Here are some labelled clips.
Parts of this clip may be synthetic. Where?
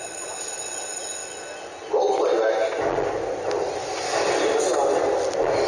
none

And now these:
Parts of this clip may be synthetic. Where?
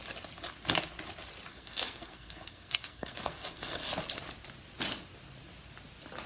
1.5-3.8 (codec, SNAC)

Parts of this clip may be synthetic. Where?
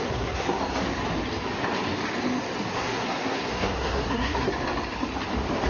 0.0-0.6 (codec, SNAC); 2.7-4.5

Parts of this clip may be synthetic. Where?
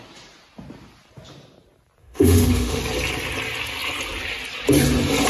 2.0-2.8 (autoencoder, DAC-VAE)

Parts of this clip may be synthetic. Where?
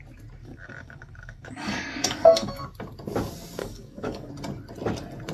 0.4-2.5 (codec, DAC); 3.6-4.3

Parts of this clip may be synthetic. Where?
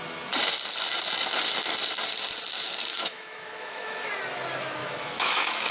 2.9-4.1 (autoencoder, DAC-VAE); 4.8-5.7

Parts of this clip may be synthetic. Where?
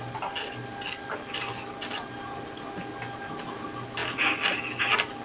none